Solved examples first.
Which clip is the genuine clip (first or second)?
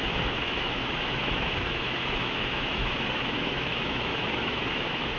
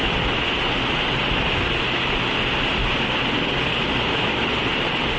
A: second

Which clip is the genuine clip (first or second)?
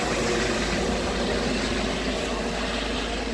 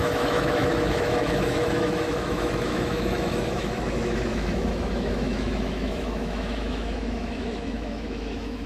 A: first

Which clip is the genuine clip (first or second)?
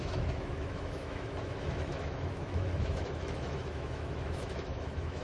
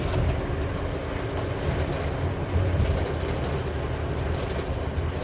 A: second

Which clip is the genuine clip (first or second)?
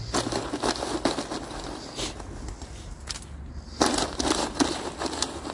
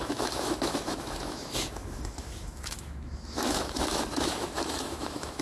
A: first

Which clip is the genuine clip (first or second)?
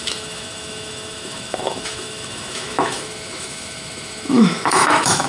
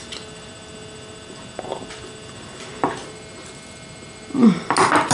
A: second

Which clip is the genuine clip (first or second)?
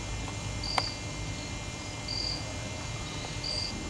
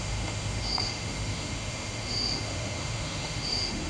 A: first